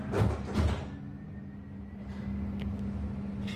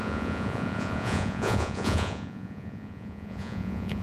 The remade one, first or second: second